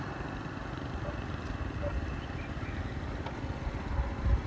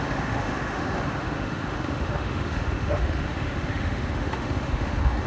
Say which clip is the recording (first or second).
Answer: first